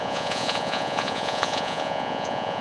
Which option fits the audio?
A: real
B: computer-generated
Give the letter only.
B